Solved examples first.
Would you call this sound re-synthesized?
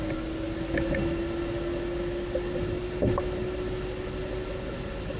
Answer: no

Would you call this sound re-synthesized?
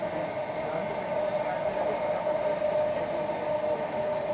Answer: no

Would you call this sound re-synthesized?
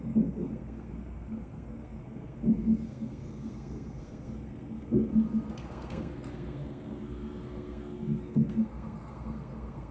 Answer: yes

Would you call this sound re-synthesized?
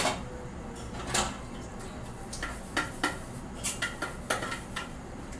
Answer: no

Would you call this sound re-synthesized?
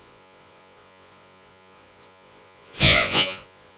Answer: yes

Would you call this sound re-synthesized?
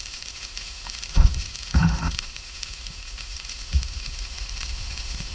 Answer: yes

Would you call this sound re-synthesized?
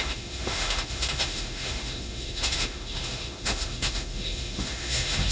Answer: yes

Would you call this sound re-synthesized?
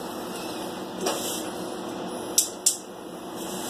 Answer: no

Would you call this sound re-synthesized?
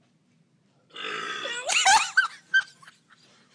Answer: no